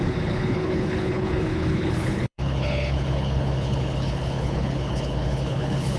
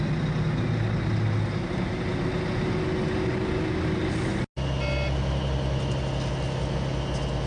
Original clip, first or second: second